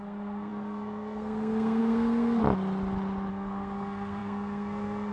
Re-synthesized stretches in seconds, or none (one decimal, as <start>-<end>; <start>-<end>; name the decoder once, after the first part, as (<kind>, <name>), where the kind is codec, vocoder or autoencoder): 0.0-2.4 (codec, SNAC); 3.3-5.1